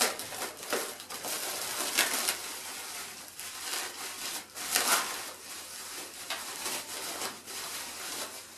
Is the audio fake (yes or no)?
no